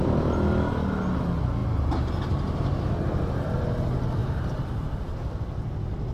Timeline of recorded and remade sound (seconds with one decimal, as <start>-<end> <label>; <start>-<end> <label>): 0.0-1.6 recorded; 1.6-2.3 remade; 2.3-4.2 recorded; 4.2-4.9 remade; 4.9-6.1 recorded